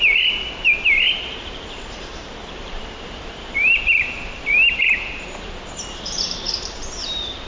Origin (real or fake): fake